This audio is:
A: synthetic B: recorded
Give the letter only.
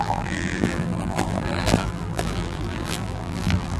A